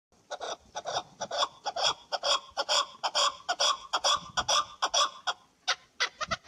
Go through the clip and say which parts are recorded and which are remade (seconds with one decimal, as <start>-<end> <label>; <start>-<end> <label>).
0.0-6.5 recorded